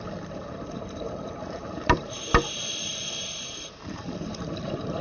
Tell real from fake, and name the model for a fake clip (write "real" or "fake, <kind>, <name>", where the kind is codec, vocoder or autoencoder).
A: fake, vocoder, BigVGAN v2